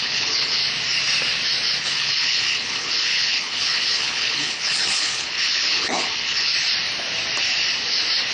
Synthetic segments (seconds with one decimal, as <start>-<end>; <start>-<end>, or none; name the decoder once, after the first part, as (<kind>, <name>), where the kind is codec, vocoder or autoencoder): 0.0-0.6 (codec, HILCodec); 1.8-6.5